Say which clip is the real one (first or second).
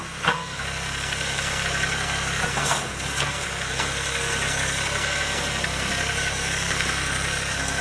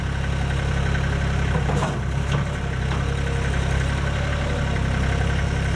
second